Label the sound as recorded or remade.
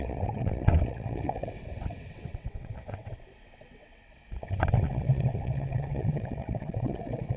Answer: remade